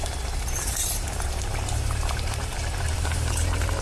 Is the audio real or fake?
fake